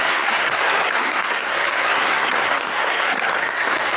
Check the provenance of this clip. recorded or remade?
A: remade